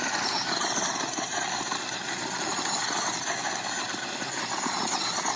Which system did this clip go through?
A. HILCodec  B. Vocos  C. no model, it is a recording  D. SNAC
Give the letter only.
C